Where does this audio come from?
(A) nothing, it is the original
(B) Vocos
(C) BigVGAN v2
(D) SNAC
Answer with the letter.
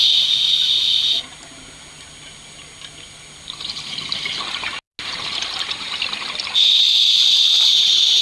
A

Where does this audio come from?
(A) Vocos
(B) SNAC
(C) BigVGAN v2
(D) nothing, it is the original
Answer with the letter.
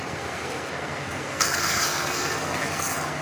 B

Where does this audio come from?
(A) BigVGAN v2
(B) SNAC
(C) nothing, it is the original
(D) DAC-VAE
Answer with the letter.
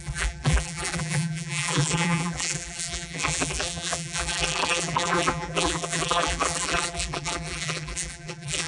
A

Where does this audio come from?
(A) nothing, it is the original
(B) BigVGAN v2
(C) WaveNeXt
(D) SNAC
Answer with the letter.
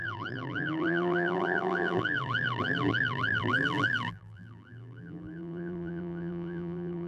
B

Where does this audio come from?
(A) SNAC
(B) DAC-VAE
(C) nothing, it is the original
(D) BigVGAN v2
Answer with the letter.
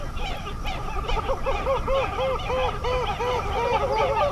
C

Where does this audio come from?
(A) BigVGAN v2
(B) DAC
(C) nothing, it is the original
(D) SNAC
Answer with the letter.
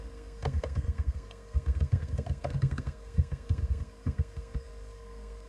D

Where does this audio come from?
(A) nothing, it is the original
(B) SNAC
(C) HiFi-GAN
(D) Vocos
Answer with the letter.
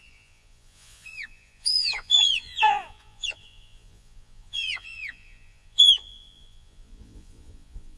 D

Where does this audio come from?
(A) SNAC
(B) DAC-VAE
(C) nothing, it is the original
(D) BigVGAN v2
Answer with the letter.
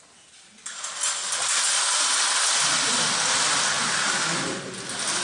C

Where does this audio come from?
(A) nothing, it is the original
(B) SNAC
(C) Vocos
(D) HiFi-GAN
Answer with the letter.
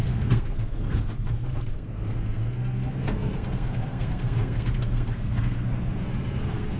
B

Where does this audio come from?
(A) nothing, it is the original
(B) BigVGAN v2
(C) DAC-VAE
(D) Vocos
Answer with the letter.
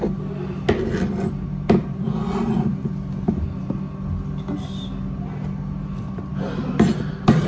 A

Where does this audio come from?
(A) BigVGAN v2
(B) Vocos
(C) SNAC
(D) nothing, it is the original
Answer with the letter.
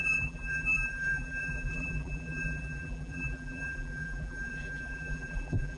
A